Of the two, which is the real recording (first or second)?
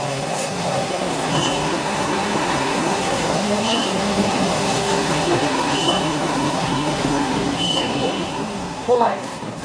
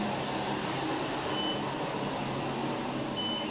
second